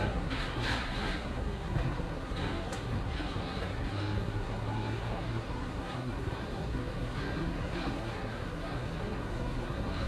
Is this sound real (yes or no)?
no